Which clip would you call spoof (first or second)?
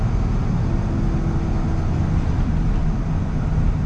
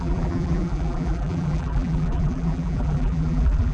second